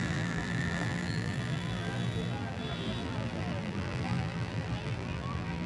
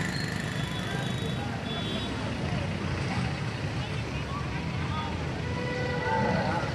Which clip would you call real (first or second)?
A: second